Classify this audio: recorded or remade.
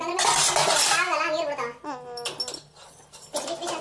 recorded